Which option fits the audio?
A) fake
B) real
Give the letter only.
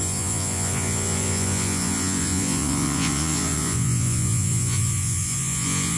A